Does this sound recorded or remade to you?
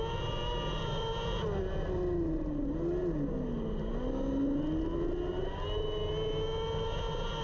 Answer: recorded